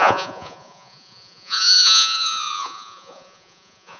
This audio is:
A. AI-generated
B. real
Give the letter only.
A